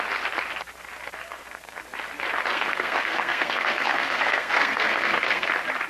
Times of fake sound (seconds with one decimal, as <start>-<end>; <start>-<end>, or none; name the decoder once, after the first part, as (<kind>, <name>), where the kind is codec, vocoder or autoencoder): 1.3-1.8 (codec, SNAC); 2.5-5.5